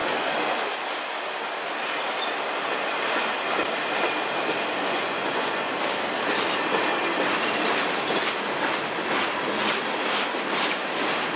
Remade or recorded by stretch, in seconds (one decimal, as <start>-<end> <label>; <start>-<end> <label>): 0.0-4.8 recorded; 4.8-5.8 remade; 5.8-11.4 recorded